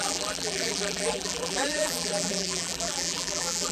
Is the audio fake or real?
fake